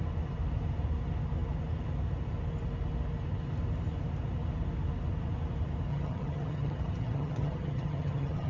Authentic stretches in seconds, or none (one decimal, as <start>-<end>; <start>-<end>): 0.0-5.9